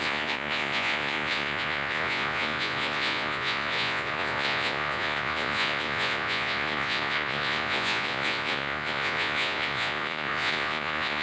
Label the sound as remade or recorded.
remade